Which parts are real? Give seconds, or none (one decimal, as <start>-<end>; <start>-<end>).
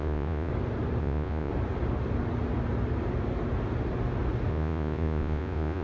0.5-1.0; 1.5-4.5